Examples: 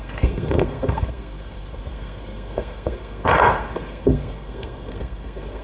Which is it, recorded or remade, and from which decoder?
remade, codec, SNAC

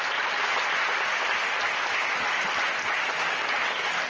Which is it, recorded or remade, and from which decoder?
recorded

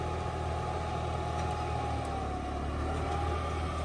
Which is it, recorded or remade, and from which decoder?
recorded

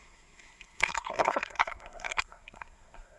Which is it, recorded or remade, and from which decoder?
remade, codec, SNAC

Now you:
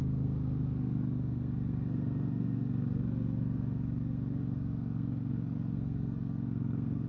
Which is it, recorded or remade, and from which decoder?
remade, codec, SNAC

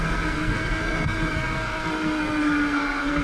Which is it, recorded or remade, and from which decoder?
remade, codec, SNAC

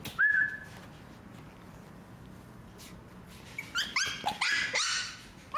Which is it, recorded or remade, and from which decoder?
recorded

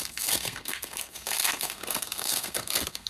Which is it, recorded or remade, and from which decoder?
remade, codec, SNAC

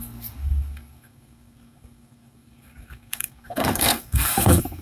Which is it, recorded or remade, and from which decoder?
remade, codec, SNAC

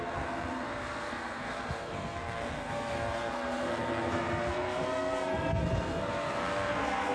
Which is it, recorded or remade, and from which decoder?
remade, codec, SNAC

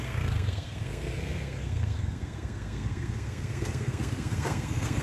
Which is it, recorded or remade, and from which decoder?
remade, codec, SNAC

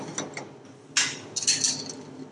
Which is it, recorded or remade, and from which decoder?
recorded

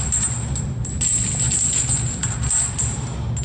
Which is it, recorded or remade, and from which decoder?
recorded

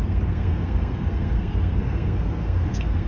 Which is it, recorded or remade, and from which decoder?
remade, codec, SNAC